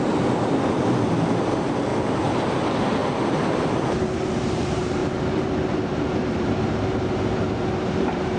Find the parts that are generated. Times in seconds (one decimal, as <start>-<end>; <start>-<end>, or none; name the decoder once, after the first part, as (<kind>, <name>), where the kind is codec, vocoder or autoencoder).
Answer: 0.0-3.0 (vocoder, BigVGAN v2); 3.6-5.0; 5.7-8.4